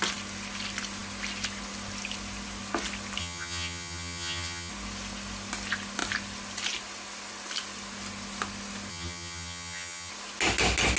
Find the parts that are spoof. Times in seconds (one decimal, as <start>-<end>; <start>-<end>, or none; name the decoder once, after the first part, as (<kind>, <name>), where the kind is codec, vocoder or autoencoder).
3.2-4.7 (vocoder, HiFi-GAN); 8.9-10.1